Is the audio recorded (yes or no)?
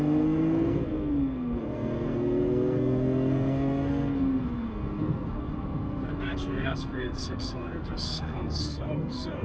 no